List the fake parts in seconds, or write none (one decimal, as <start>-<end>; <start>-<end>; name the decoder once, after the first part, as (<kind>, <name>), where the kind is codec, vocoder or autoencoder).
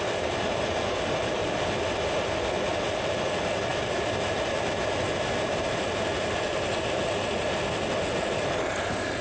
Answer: none